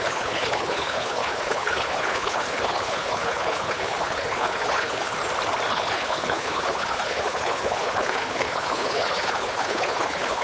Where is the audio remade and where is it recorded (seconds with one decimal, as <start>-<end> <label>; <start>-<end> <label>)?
0.0-5.2 remade; 5.2-5.7 recorded; 5.7-10.4 remade